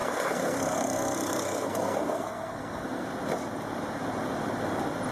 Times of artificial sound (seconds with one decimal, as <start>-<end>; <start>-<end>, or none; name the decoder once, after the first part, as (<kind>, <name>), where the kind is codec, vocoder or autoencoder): 0.0-3.1 (codec, SNAC)